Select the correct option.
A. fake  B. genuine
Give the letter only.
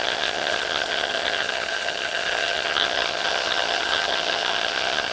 A